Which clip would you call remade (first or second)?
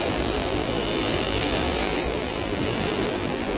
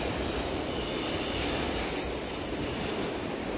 first